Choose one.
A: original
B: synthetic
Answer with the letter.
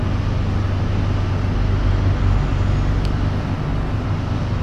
A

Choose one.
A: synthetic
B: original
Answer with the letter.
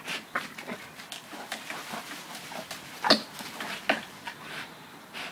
B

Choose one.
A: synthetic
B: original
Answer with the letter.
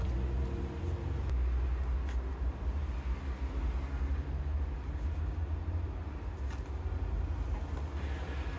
B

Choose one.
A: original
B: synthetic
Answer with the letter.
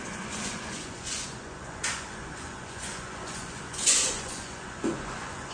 B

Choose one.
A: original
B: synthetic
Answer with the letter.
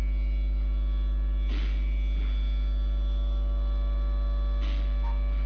A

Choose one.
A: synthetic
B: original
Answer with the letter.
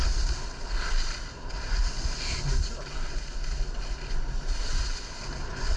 B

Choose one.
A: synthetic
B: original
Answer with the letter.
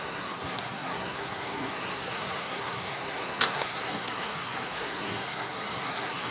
A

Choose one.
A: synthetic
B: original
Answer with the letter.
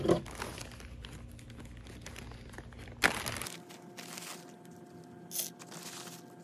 B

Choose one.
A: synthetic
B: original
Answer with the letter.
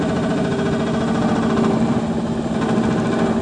B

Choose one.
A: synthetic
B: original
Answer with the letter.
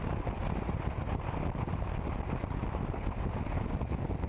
B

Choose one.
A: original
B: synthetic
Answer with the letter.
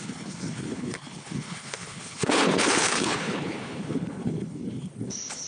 B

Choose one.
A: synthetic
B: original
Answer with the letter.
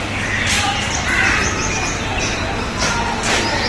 B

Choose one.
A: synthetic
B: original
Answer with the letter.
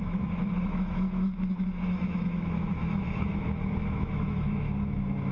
A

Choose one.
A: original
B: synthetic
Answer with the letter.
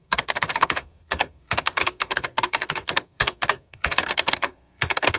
B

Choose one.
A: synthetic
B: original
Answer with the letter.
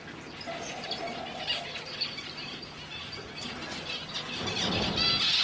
B